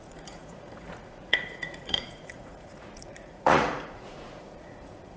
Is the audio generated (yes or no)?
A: yes